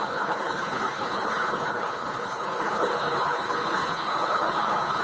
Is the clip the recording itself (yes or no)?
no